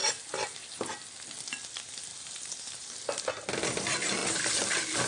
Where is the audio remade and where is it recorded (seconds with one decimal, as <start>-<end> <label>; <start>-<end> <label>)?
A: 0.0-0.8 remade; 0.8-2.1 recorded; 2.1-3.0 remade; 3.0-5.1 recorded